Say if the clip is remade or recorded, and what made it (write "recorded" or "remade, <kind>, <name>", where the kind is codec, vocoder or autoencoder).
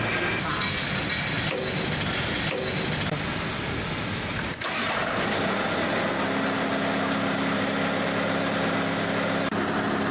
recorded